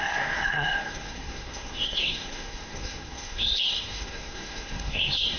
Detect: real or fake fake